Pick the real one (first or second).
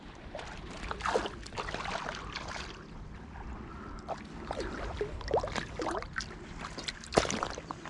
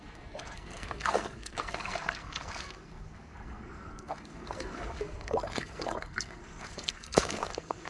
first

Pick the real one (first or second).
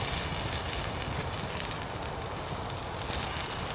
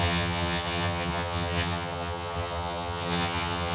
first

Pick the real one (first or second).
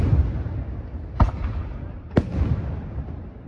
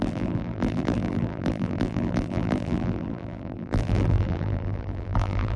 first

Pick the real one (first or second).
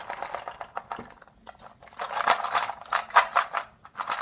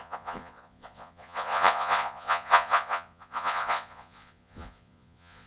first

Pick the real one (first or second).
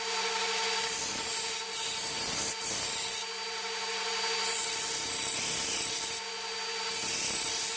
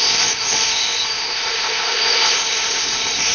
first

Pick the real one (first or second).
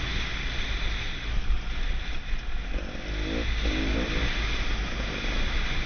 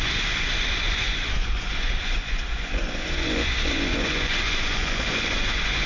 first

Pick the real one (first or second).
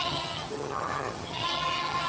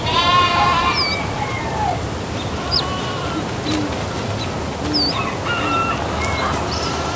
second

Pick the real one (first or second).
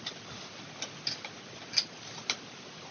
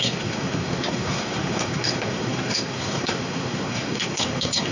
first